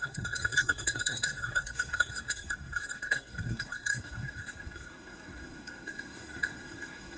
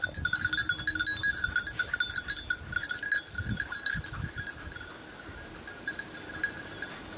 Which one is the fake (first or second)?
first